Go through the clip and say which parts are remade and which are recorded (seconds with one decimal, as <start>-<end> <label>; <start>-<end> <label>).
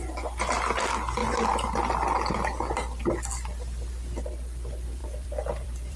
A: 0.0-5.0 recorded; 5.0-6.0 remade